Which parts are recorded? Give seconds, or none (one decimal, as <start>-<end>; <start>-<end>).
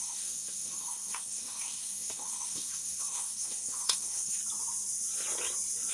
4.4-5.9